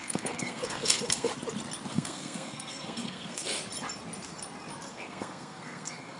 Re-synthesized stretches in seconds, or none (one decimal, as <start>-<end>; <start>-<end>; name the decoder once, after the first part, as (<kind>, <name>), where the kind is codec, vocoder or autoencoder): 0.0-1.3 (codec, SNAC); 1.9-3.6; 4.9-6.2